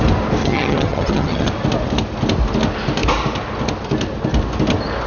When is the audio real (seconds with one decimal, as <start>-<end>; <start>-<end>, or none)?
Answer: 0.0-0.4; 1.5-5.1